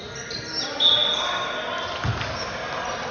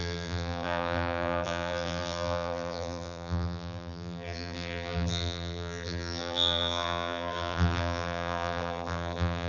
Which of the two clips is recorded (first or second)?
first